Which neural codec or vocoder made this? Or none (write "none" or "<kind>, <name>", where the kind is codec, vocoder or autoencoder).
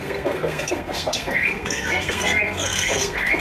codec, SNAC